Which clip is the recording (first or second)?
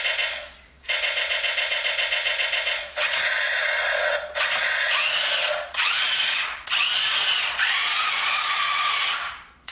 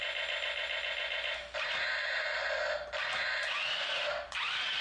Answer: second